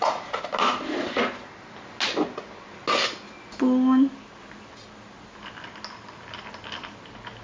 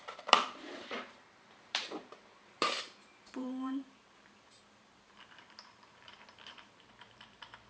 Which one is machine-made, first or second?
second